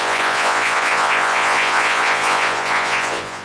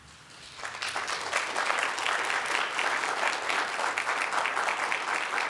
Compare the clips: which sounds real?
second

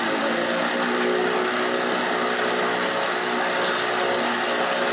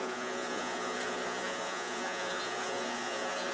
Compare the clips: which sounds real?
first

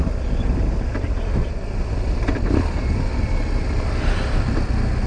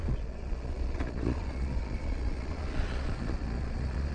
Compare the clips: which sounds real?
first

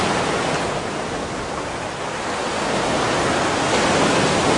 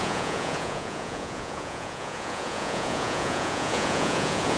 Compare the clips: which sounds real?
first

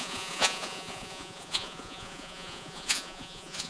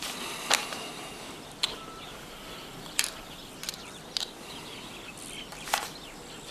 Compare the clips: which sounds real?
second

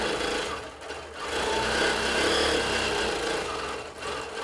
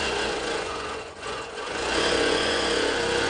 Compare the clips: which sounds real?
first